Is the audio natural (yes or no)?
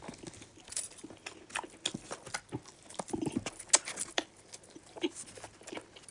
yes